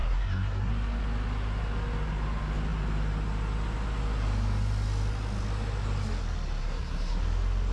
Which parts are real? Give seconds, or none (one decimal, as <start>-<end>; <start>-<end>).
0.7-6.6; 7.2-7.7